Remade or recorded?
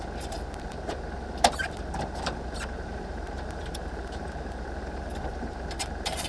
remade